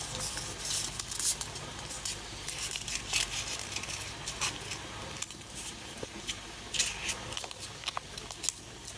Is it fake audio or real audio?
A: real